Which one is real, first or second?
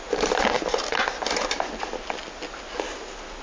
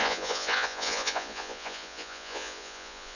first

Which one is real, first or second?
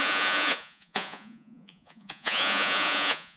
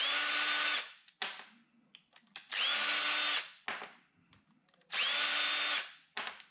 second